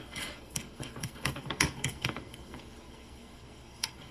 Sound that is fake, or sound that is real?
fake